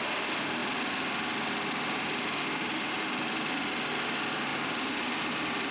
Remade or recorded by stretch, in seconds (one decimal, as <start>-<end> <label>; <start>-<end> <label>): 0.0-5.7 recorded